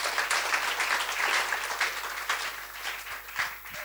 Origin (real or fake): real